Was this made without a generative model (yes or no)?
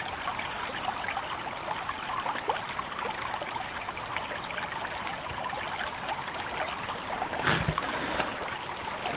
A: yes